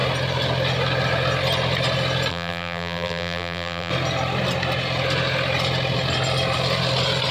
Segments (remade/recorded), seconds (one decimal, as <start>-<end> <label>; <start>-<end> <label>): 0.0-2.3 recorded; 2.3-3.9 remade; 3.9-7.3 recorded